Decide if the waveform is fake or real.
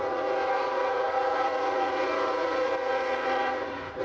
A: fake